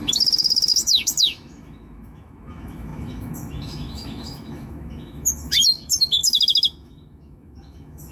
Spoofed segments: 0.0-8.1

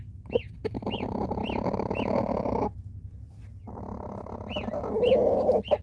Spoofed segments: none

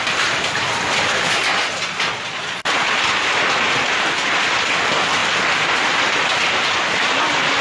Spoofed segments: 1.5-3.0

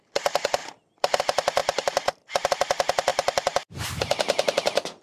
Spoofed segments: 1.6-2.5; 3.1-3.8

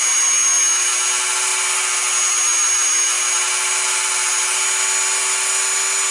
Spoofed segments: none

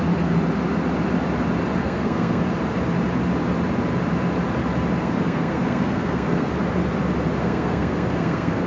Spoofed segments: 1.8-2.4; 5.0-6.5; 7.4-8.7